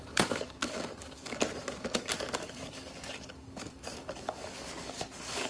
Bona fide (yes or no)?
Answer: no